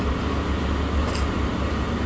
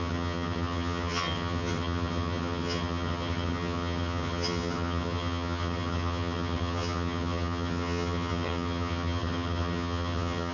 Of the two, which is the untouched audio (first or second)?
first